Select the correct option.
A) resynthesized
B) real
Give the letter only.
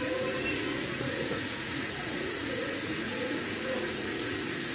A